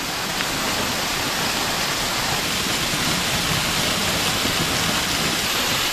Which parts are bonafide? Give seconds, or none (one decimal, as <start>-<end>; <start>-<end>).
0.0-1.1; 4.6-5.9